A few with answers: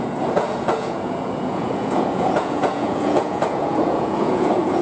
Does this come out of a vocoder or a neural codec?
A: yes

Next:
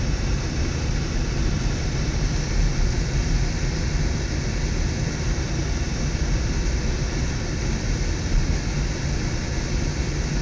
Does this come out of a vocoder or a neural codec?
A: no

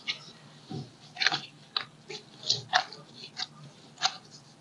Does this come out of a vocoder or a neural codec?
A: no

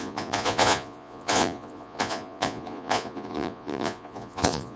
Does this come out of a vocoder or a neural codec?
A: yes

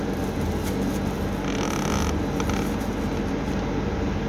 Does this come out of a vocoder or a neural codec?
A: no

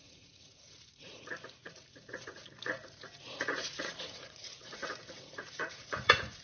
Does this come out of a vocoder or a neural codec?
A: yes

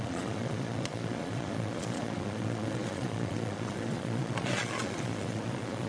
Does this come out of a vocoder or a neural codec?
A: yes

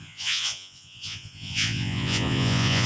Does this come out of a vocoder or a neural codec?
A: yes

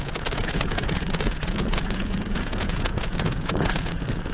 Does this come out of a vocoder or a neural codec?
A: yes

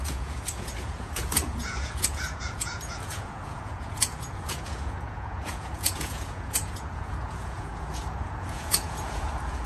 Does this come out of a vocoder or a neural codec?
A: yes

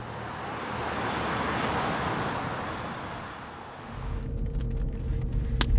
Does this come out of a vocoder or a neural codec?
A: no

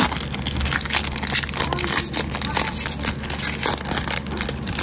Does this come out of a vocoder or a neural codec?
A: no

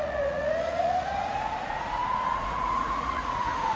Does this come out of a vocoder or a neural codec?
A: yes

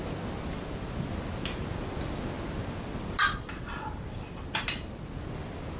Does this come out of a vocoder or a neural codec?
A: no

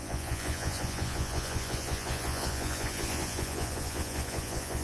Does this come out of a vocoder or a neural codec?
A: yes